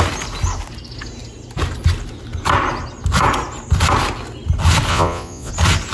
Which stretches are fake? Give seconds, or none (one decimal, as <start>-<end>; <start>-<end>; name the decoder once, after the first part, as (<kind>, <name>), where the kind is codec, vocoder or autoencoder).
4.9-5.5 (vocoder, Vocos)